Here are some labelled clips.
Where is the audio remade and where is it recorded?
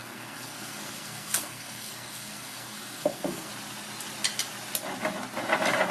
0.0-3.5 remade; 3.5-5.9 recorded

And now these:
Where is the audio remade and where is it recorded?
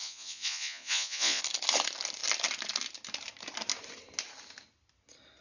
0.0-1.4 remade; 1.4-5.4 recorded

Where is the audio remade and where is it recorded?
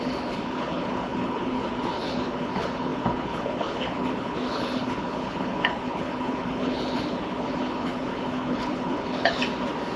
0.0-9.4 remade; 9.4-10.0 recorded